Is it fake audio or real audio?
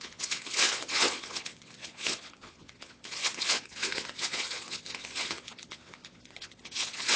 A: fake